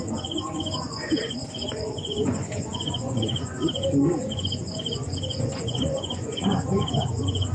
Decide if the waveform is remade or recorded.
remade